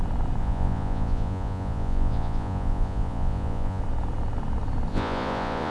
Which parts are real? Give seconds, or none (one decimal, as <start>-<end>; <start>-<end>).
0.0-0.4; 3.8-4.9